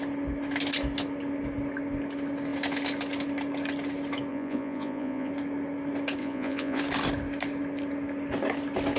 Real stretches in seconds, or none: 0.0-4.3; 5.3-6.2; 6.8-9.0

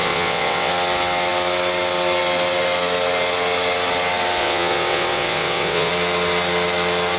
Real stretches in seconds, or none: 0.7-4.4; 5.9-7.2

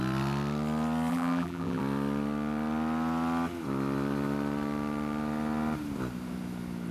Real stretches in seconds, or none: 0.0-1.1; 1.8-6.9

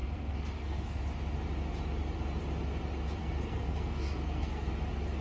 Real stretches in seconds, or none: 1.0-3.2; 4.7-5.2

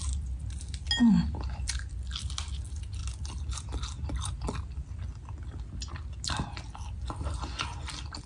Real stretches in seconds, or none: 0.0-8.3